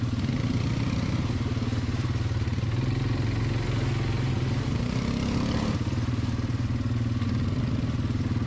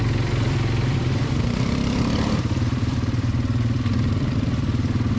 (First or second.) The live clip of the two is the first